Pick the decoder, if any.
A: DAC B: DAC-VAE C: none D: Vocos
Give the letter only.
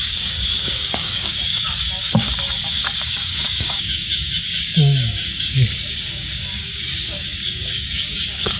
A